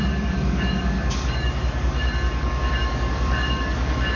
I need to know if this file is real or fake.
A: fake